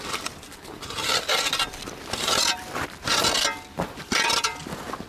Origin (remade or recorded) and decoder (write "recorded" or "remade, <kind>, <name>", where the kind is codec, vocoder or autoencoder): recorded